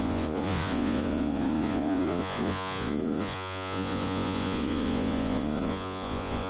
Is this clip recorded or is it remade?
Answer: remade